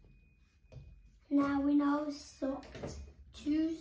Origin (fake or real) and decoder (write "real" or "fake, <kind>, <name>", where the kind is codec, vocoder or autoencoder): real